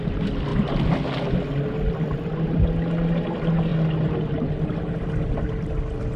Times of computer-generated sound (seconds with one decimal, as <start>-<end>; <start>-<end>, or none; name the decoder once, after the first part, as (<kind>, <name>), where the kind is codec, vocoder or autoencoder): none